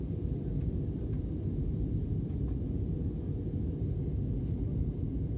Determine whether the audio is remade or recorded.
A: recorded